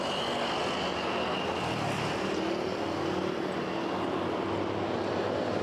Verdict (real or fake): real